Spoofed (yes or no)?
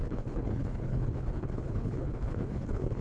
yes